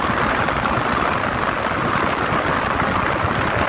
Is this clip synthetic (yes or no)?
no